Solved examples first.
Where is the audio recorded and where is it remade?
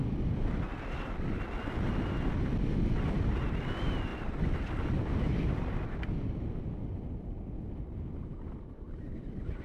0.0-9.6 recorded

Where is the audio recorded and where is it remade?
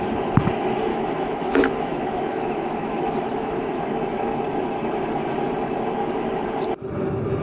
0.0-0.9 recorded; 0.9-3.7 remade; 3.7-7.4 recorded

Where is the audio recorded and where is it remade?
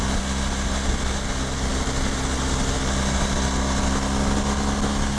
0.0-5.2 recorded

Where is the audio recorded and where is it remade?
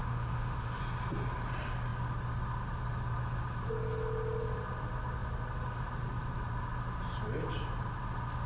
0.0-0.8 remade; 0.8-8.5 recorded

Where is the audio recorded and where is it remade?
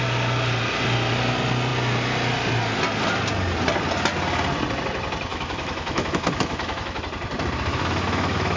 0.0-5.3 recorded; 5.3-7.0 remade; 7.0-7.7 recorded; 7.7-8.6 remade